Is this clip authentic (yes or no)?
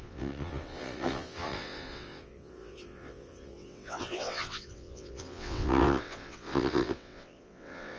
no